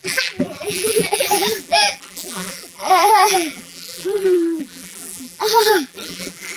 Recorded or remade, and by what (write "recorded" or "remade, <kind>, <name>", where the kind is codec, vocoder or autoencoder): remade, vocoder, BigVGAN v2